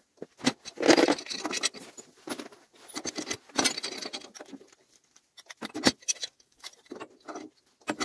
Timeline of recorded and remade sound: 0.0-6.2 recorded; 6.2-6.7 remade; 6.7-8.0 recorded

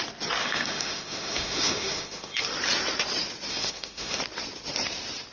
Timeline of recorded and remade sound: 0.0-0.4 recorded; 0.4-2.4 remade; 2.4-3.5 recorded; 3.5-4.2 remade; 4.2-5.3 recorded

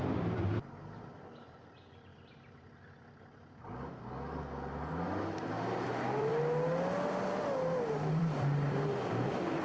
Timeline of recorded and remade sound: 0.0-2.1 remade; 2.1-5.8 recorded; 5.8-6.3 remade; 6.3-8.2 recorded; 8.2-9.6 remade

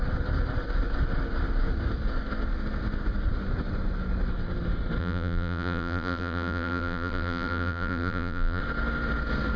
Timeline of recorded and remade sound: 0.0-5.0 recorded; 5.0-8.6 remade; 8.6-9.6 recorded

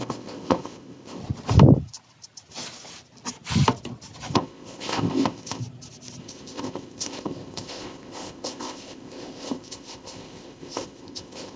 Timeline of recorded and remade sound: 0.0-1.2 remade; 1.2-4.3 recorded; 4.3-5.6 remade; 5.6-6.2 recorded; 6.2-11.6 remade